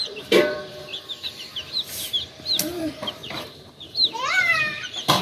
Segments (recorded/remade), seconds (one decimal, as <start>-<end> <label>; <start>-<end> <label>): 0.0-0.9 remade; 0.9-2.8 recorded; 2.8-5.2 remade